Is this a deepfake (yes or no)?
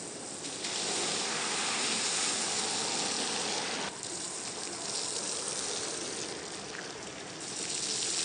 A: no